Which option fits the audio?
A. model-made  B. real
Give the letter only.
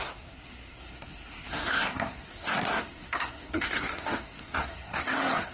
A